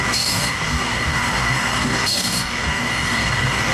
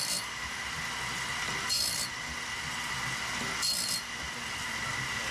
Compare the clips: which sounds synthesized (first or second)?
first